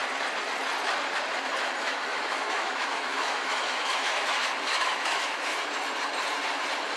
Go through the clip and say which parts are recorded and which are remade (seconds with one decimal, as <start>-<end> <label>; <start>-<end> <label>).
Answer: 0.0-1.8 recorded; 1.8-5.6 remade; 5.6-7.0 recorded